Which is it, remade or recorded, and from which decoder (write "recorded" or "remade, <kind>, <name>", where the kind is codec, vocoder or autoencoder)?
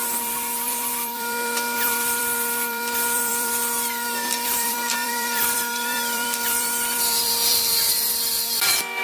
remade, vocoder, BigVGAN v2